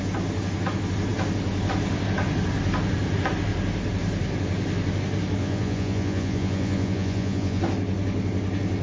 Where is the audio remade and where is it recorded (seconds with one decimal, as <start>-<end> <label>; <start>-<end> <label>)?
0.0-5.4 recorded; 5.4-7.6 remade; 7.6-8.8 recorded